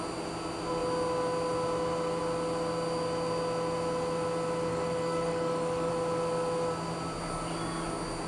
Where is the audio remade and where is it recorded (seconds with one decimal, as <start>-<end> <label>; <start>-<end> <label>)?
0.0-4.7 recorded; 4.7-5.9 remade; 5.9-8.3 recorded